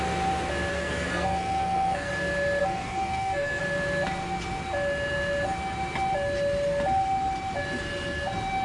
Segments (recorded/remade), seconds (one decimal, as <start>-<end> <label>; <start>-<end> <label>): 0.0-0.7 recorded; 0.7-2.1 remade; 2.1-2.6 recorded; 2.6-3.6 remade; 3.6-8.6 recorded